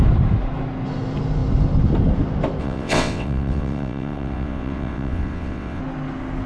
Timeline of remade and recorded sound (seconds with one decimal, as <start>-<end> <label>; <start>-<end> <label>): 0.0-2.6 recorded; 2.6-5.8 remade; 5.8-6.5 recorded